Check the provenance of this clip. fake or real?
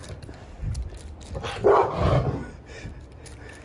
real